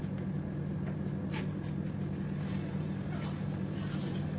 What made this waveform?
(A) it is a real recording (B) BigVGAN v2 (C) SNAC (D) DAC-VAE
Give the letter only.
A